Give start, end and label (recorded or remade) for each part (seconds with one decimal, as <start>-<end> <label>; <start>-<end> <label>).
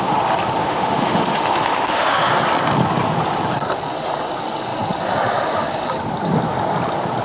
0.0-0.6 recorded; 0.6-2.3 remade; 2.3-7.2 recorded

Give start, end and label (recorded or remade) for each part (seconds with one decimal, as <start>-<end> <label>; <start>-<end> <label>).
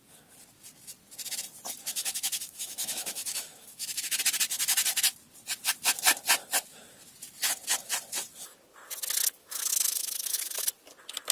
0.0-2.0 recorded; 2.0-4.2 remade; 4.2-9.4 recorded; 9.4-10.6 remade; 10.6-11.3 recorded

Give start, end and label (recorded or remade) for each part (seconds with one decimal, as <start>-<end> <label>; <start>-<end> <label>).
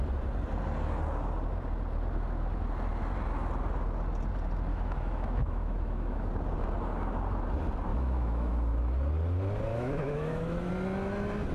0.0-4.7 recorded; 4.7-6.3 remade; 6.3-7.9 recorded; 7.9-8.5 remade; 8.5-9.7 recorded; 9.7-10.7 remade; 10.7-11.5 recorded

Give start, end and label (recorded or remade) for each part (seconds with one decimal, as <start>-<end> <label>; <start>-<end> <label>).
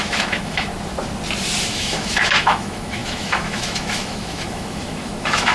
0.0-0.7 remade; 0.7-1.7 recorded; 1.7-5.5 remade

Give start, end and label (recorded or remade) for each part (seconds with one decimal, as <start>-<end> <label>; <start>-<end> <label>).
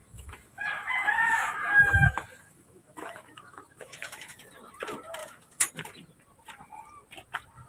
0.0-4.5 remade; 4.5-5.2 recorded; 5.2-5.7 remade; 5.7-7.7 recorded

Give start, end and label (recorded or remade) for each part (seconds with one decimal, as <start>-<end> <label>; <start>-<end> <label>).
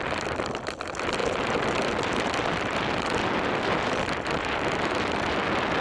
0.0-5.8 recorded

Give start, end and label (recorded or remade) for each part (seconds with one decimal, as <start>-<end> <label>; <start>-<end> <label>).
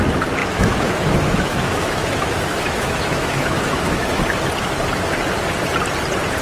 0.0-0.4 recorded; 0.4-4.2 remade; 4.2-6.4 recorded